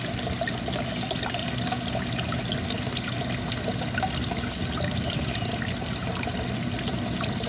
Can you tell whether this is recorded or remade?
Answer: recorded